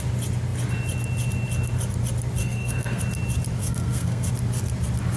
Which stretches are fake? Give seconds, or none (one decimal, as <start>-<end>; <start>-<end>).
2.4-3.0; 3.6-4.3